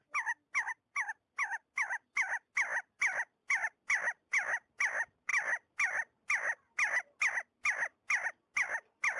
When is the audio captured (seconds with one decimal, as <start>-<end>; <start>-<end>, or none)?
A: 0.0-9.2